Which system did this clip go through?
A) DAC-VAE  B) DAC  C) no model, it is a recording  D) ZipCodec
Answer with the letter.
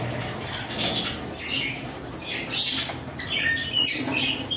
C